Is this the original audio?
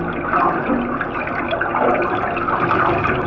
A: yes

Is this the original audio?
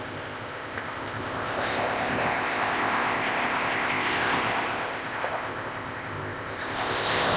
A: no